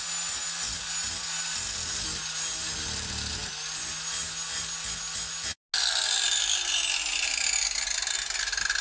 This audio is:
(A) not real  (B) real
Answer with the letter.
B